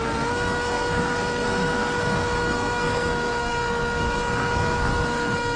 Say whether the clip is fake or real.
fake